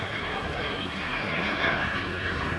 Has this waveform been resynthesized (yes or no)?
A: yes